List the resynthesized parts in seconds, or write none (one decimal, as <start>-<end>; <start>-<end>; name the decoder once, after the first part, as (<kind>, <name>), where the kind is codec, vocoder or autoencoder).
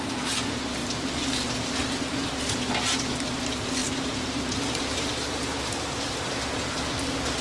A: 0.8-2.7 (vocoder, BigVGAN v2); 3.8-6.3